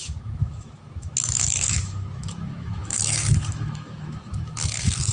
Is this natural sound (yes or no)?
no